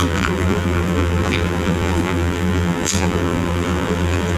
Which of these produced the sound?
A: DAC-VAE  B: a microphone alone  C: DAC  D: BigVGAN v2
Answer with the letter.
D